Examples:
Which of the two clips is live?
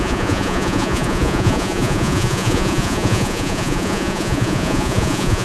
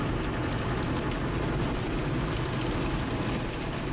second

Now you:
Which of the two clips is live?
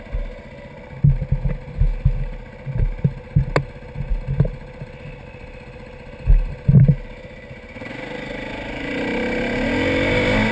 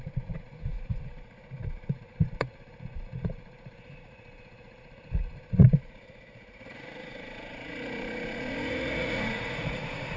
first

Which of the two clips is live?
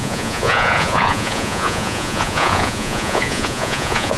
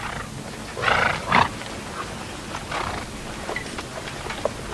second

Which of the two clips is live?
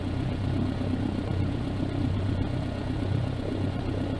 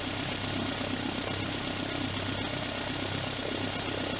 second